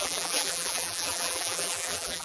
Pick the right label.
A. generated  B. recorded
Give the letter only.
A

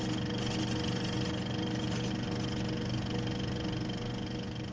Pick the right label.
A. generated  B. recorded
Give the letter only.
B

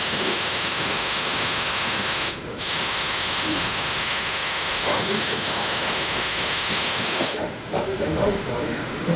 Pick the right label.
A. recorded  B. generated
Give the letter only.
B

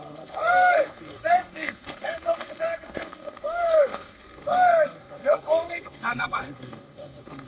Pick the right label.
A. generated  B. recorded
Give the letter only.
A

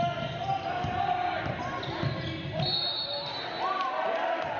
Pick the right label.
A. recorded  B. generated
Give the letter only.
A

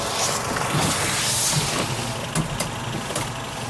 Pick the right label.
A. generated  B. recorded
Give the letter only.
B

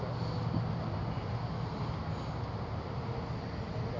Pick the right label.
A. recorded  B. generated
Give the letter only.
A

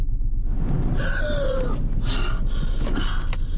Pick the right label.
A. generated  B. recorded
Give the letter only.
B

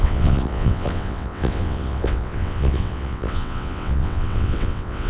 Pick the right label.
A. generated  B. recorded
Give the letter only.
A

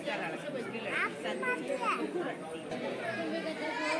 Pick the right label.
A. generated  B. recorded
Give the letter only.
B